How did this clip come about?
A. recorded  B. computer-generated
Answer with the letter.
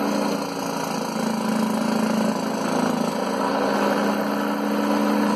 A